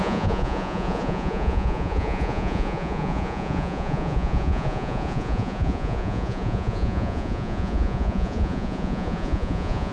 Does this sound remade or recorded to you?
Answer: remade